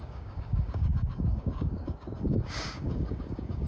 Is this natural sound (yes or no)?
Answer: no